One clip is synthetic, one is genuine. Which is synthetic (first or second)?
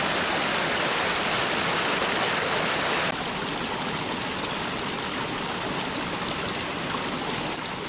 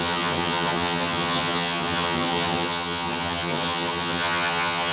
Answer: second